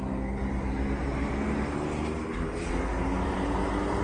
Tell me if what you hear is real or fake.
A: real